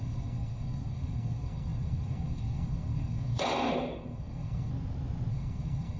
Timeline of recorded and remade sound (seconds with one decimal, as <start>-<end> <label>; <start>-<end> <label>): 0.0-4.7 remade; 4.7-5.3 recorded; 5.3-6.0 remade